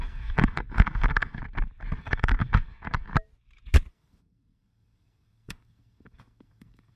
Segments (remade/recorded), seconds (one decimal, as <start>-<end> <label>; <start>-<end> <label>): 0.0-1.4 remade; 1.4-2.0 recorded; 2.0-3.1 remade; 3.1-3.9 recorded; 3.9-7.0 remade